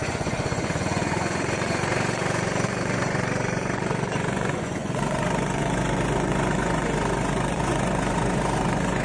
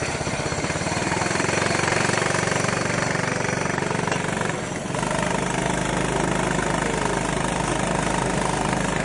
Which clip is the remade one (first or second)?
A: first